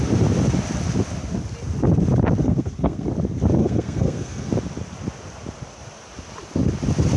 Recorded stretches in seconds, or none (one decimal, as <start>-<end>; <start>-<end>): 0.0-2.4; 3.1-3.6; 4.5-7.2